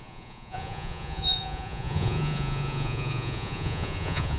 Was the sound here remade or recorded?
remade